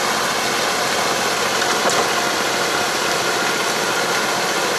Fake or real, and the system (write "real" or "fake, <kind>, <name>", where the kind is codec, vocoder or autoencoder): real